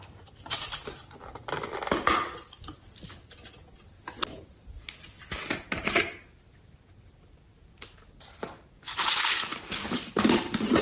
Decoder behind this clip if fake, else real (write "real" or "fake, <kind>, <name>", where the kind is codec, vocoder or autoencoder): real